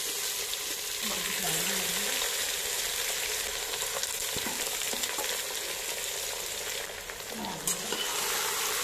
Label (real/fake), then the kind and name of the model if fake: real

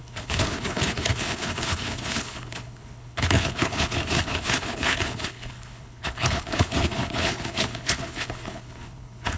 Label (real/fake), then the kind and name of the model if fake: fake, codec, HILCodec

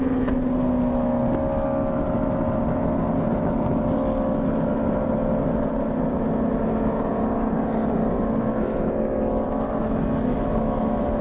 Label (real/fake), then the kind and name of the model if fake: real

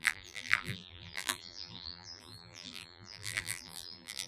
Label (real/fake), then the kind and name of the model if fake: fake, vocoder, BigVGAN v2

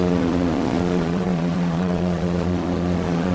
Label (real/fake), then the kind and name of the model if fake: fake, vocoder, Vocos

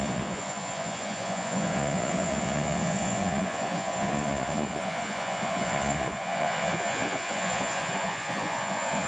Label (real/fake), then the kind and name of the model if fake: fake, vocoder, Vocos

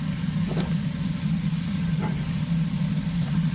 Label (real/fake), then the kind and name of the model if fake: fake, vocoder, BigVGAN v2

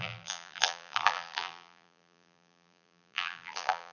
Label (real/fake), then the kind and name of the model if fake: fake, vocoder, BigVGAN v2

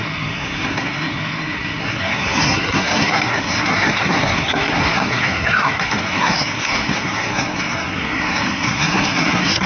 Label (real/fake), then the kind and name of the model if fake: fake, codec, SNAC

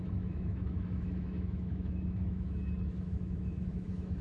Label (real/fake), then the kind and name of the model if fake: fake, autoencoder, DAC-VAE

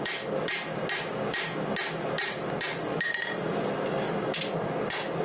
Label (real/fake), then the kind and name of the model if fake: real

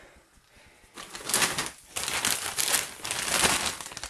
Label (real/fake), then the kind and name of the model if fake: real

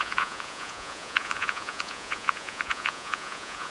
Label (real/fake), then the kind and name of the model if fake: fake, vocoder, Vocos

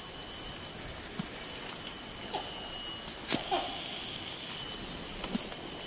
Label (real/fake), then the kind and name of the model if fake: real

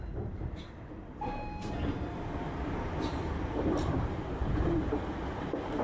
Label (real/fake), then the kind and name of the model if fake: fake, vocoder, BigVGAN v2